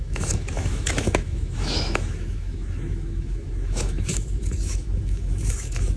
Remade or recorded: remade